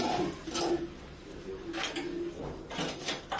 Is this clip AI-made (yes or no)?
no